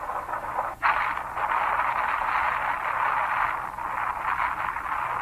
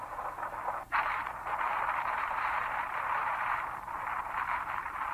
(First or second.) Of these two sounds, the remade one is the second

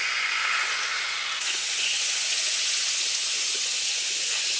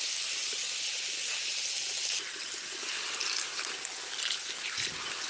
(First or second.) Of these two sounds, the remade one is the first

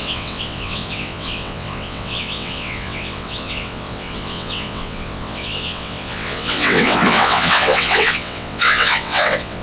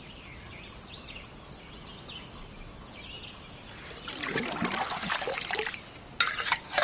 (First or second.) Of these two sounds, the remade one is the first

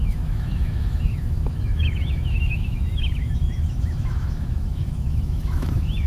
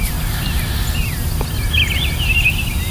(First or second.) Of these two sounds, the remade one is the first